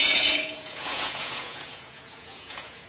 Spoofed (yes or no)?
yes